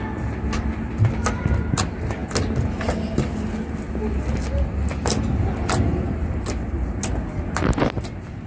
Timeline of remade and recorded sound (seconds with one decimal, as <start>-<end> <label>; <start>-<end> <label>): 0.0-8.5 recorded